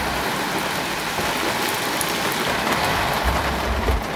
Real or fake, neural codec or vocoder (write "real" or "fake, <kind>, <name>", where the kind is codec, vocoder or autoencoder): real